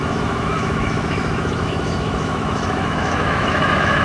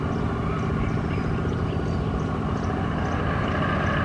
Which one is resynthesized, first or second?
first